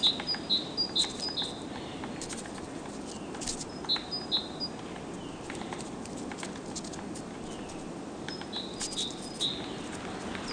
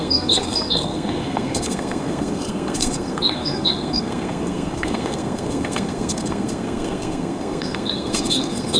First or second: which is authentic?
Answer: first